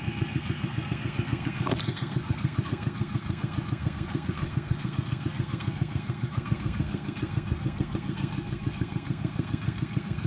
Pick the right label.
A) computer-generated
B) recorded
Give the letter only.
A